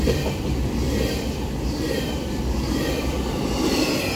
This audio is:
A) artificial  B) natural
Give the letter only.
B